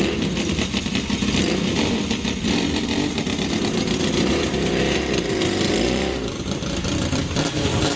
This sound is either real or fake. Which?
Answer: real